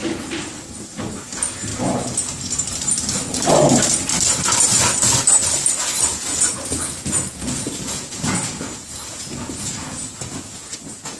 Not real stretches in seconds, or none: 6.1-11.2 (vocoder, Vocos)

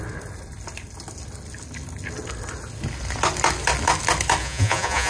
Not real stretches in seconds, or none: 4.4-5.1 (vocoder, Vocos)

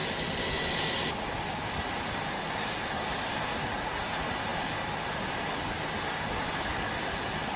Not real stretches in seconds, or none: 3.5-4.0 (vocoder, Vocos)

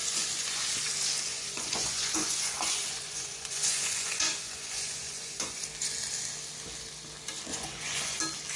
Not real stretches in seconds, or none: 0.0-0.7 (vocoder, Vocos); 1.3-5.6; 7.5-8.2

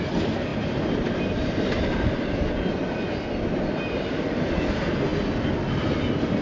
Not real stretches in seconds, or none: none

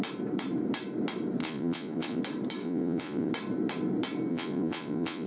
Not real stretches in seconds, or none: 1.4-2.2 (vocoder, Vocos); 2.6-3.3; 4.3-5.3

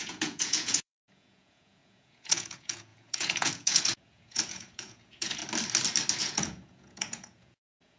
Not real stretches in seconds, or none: 0.0-5.4 (vocoder, Vocos); 6.2-8.0

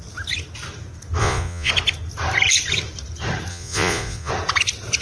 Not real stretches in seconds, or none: 1.2-1.7 (vocoder, Vocos); 3.5-4.3